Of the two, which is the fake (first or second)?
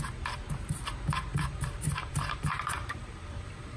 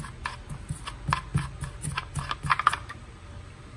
first